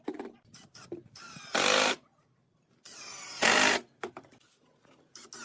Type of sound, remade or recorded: recorded